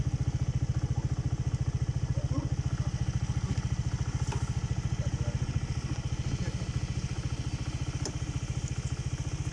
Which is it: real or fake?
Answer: real